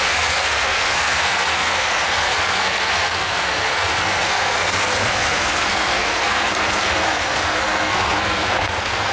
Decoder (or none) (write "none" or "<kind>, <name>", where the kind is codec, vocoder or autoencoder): codec, SNAC